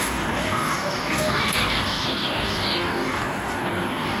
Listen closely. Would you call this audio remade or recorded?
remade